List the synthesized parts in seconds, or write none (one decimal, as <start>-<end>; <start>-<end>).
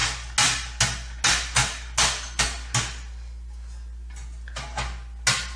none